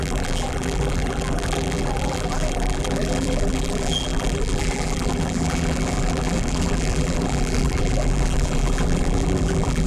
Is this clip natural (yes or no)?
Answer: no